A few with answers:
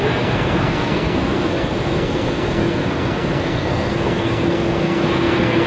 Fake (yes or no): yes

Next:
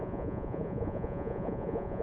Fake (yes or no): yes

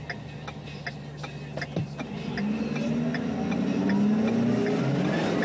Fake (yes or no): no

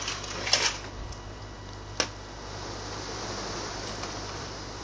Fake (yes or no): no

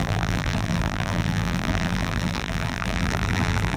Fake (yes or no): yes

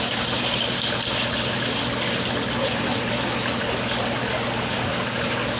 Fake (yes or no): no